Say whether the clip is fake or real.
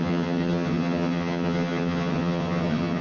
fake